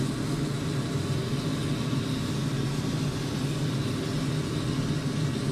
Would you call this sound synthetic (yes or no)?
no